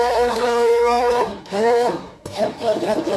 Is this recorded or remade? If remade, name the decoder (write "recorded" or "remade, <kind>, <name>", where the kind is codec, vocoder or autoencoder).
remade, codec, SNAC